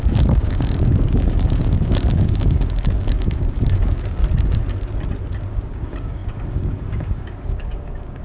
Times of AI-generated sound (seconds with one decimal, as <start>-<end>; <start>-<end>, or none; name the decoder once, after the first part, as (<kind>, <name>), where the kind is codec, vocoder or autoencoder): 0.0-4.2 (codec, DAC); 5.5-8.2